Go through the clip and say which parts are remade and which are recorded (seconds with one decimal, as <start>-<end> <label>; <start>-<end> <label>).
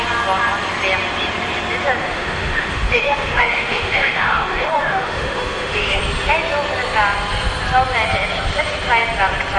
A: 0.0-2.0 recorded; 2.0-6.0 remade; 6.0-9.6 recorded